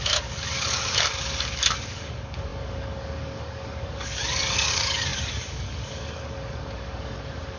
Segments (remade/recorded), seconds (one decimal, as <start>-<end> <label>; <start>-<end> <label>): 0.0-7.6 remade